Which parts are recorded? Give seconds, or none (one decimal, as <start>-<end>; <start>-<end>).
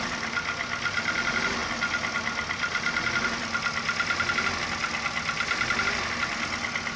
0.0-7.0